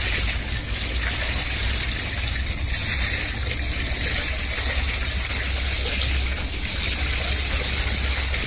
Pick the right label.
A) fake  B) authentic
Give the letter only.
B